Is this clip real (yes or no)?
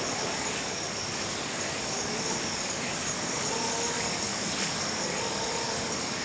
no